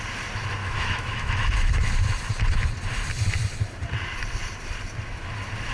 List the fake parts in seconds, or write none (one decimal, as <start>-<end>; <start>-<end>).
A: 0.6-1.3